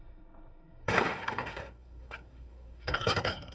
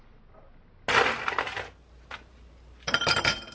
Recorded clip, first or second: second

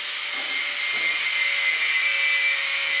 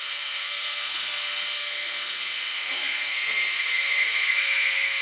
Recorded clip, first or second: first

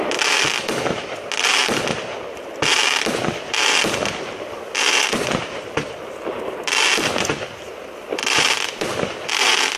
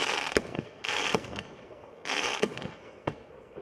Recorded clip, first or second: first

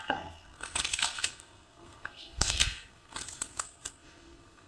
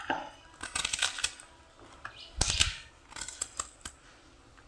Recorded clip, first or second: second